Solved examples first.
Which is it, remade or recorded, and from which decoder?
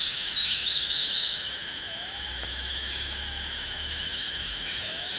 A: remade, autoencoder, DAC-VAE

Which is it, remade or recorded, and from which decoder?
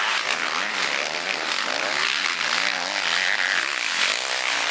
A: recorded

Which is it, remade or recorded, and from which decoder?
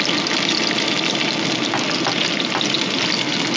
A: recorded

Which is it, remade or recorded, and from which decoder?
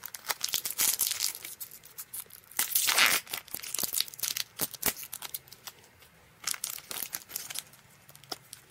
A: recorded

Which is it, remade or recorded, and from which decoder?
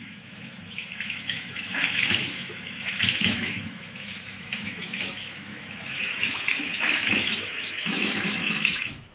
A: remade, autoencoder, DAC-VAE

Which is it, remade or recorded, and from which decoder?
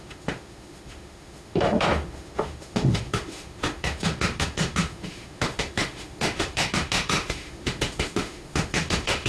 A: remade, autoencoder, DAC-VAE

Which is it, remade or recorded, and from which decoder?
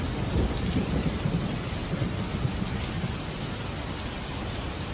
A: recorded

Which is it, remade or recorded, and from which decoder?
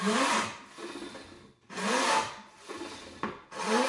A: recorded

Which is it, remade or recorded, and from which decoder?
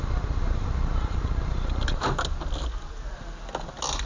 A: recorded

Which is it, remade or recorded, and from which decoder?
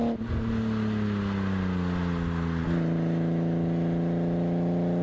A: recorded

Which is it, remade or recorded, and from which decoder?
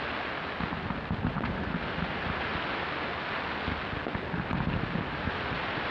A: recorded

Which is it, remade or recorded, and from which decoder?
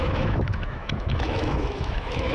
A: remade, autoencoder, DAC-VAE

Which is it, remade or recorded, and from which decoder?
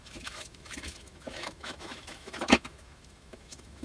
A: remade, autoencoder, DAC-VAE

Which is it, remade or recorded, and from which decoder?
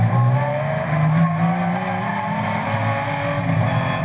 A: recorded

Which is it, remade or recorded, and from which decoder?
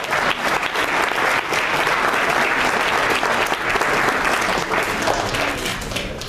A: recorded